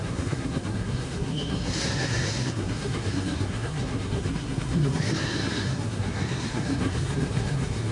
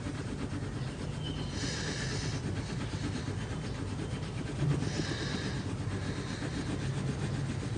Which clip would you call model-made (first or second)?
first